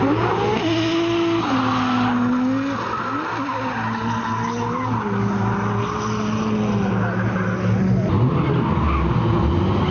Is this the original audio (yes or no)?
yes